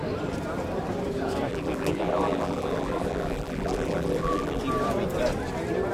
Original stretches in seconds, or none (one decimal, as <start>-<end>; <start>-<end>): 0.0-1.5; 4.6-5.9